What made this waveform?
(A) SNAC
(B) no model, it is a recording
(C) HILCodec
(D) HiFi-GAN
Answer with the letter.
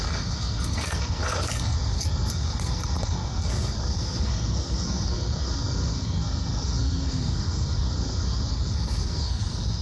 A